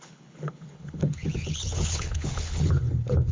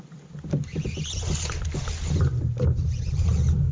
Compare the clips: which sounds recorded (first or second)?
second